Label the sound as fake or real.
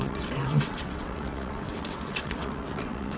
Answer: fake